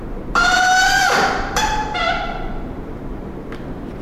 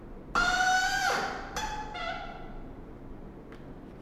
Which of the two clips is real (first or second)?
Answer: second